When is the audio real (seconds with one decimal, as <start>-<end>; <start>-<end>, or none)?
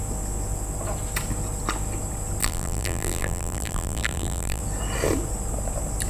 0.0-2.4; 4.6-6.1